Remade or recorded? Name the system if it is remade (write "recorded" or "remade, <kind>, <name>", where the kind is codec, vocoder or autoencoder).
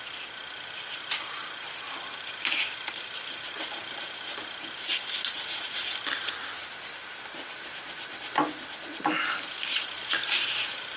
recorded